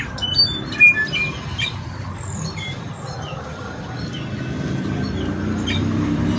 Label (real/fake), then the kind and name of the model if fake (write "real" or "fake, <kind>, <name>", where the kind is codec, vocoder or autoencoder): fake, vocoder, BigVGAN v2